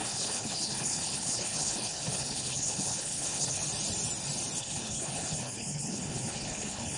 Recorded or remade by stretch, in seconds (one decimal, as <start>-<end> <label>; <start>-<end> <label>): 0.0-3.6 remade; 3.6-4.6 recorded; 4.6-7.0 remade